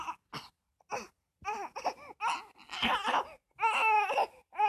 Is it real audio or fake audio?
real